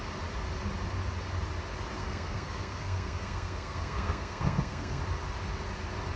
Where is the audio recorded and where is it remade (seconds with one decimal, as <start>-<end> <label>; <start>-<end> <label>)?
0.0-2.0 recorded; 2.0-5.0 remade; 5.0-6.2 recorded